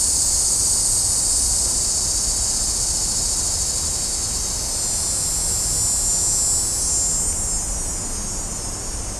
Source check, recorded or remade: recorded